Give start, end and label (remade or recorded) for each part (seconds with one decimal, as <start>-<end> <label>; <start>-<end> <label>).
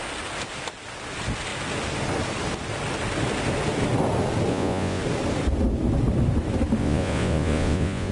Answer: 0.0-4.5 recorded; 4.5-5.0 remade; 5.0-6.8 recorded; 6.8-8.1 remade